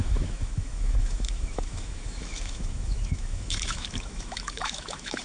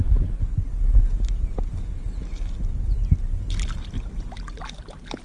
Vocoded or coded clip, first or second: first